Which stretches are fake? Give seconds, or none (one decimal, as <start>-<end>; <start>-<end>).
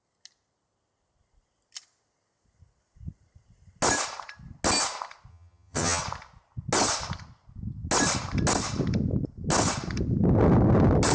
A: 5.3-6.0